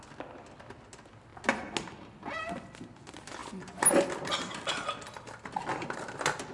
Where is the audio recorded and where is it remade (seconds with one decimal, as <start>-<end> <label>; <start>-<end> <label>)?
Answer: 0.0-6.5 recorded